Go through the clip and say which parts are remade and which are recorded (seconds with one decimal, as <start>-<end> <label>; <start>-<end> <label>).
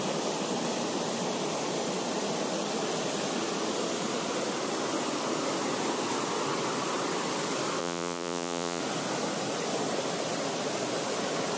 0.0-7.8 recorded; 7.8-8.8 remade; 8.8-11.6 recorded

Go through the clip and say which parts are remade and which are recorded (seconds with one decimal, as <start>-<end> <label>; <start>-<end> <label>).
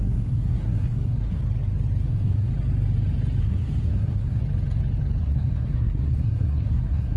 0.0-1.4 remade; 1.4-2.1 recorded; 2.1-2.5 remade; 2.5-3.4 recorded; 3.4-4.4 remade; 4.4-5.2 recorded; 5.2-7.2 remade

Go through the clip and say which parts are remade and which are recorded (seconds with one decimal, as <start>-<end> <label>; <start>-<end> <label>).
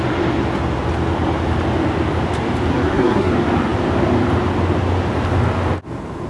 0.0-2.7 recorded; 2.7-3.3 remade; 3.3-6.3 recorded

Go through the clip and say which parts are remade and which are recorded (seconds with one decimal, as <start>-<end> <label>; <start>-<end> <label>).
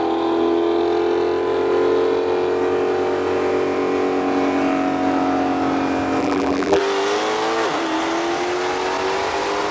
0.0-6.2 recorded; 6.2-6.8 remade; 6.8-9.7 recorded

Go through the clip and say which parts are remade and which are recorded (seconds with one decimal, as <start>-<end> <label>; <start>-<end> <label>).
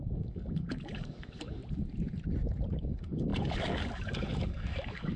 0.0-1.6 remade; 1.6-2.7 recorded; 2.7-5.2 remade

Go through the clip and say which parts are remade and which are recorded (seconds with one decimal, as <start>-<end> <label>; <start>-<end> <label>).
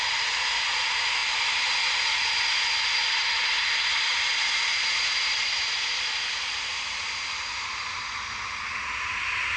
0.0-9.6 recorded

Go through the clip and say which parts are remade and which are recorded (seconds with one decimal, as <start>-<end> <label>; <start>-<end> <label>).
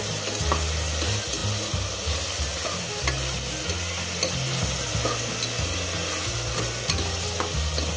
0.0-8.0 recorded